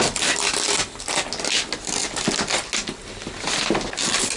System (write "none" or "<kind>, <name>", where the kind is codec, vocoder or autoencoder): none